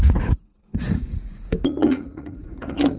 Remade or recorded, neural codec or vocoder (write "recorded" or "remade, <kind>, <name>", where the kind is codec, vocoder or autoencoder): remade, vocoder, Vocos